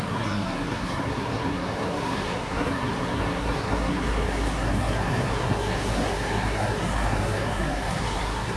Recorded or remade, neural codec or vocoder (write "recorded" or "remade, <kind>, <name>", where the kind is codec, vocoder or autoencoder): remade, codec, SNAC